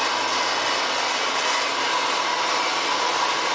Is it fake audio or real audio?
real